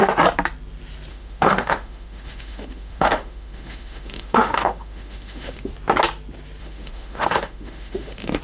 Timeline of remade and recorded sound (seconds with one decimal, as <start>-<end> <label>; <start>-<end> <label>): 0.0-1.1 recorded; 1.1-5.7 remade; 5.7-6.6 recorded; 6.6-8.4 remade